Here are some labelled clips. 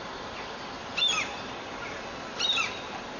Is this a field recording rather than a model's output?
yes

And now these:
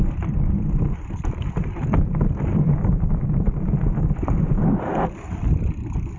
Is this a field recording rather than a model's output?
no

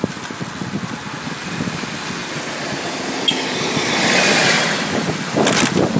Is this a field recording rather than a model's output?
yes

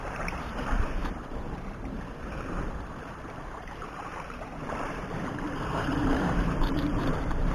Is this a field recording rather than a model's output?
no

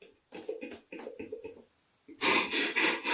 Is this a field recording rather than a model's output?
yes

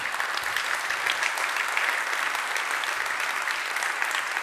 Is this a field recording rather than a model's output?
yes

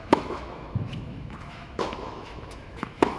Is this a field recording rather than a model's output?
no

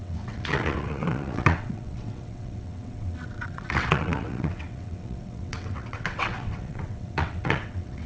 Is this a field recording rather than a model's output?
no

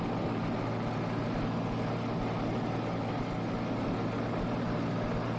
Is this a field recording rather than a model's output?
yes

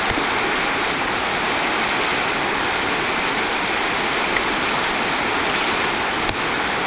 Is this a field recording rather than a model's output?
yes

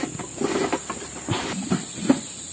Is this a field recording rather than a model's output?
yes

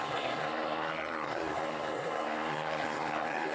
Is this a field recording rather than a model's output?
no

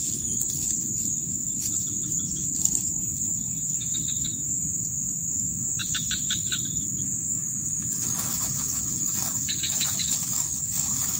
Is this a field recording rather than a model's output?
no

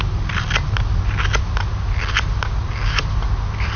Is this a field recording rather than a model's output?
yes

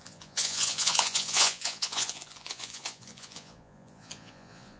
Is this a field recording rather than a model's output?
no